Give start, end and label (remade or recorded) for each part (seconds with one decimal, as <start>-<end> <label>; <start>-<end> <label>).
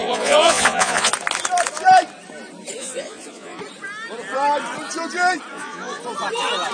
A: 0.0-1.1 remade; 1.1-2.8 recorded; 2.8-3.6 remade; 3.6-5.5 recorded; 5.5-6.0 remade; 6.0-6.7 recorded